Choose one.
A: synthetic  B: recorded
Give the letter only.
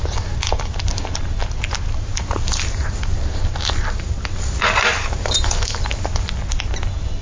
B